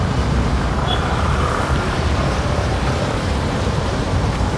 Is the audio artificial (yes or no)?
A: yes